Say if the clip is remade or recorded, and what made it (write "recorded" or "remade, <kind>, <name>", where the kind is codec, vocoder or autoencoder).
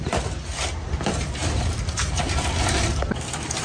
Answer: recorded